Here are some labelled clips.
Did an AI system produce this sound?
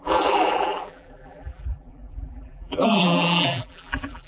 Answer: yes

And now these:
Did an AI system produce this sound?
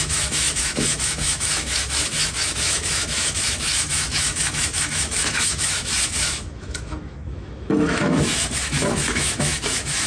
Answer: yes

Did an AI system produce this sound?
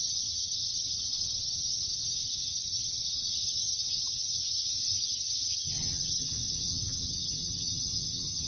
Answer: yes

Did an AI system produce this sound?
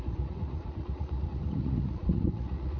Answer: yes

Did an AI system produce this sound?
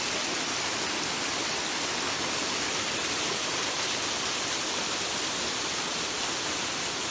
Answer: no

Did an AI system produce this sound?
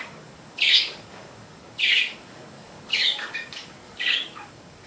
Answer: yes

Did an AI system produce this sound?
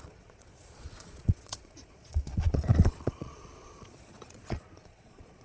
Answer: yes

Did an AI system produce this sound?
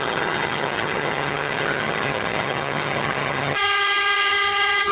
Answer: yes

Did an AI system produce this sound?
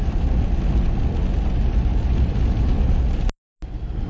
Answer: no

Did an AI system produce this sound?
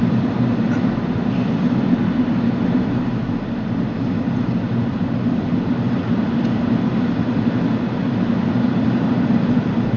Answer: yes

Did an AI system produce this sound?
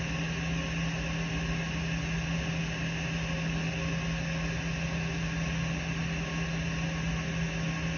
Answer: no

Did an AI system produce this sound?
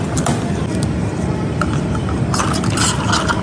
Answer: no